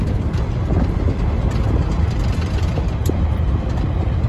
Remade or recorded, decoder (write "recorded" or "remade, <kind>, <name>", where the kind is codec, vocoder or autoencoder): recorded